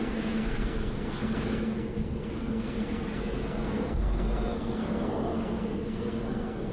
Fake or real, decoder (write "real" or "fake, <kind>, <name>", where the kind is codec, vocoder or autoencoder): fake, codec, SNAC